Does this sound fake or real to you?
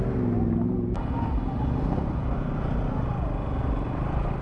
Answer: real